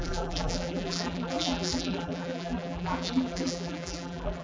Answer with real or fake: fake